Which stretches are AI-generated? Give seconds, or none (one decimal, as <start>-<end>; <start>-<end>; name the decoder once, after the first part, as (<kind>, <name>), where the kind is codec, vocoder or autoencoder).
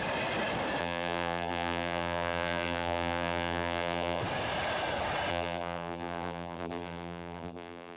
0.8-4.2 (vocoder, BigVGAN v2); 5.3-8.0